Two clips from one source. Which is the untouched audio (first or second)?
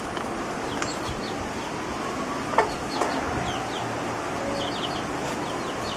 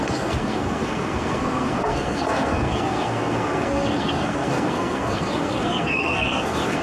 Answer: first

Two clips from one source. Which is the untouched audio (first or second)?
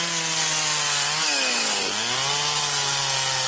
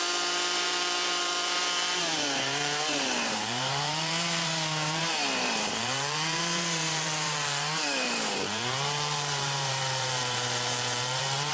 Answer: first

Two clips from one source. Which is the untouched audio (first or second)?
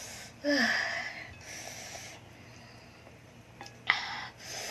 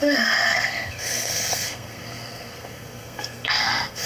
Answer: first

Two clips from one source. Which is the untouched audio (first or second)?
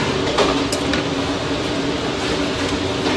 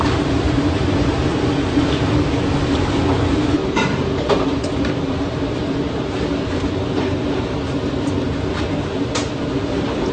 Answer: first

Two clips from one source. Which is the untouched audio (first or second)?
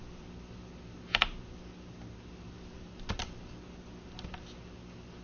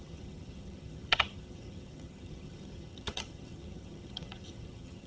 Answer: first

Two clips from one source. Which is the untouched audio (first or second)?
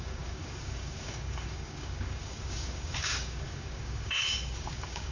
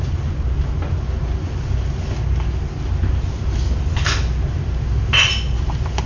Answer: second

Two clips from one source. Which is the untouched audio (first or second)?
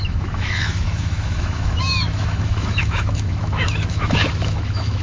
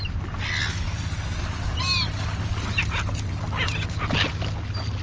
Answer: second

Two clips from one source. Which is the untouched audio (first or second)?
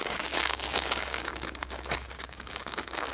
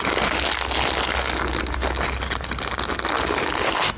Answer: second